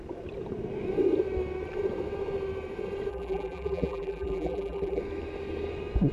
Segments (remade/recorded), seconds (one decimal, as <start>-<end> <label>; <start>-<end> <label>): 0.0-3.1 recorded; 3.1-5.0 remade; 5.0-6.1 recorded